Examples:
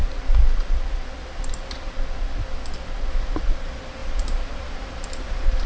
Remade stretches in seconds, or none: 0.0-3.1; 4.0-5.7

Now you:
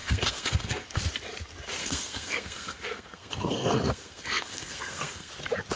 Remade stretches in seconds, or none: 0.0-1.0; 1.8-5.3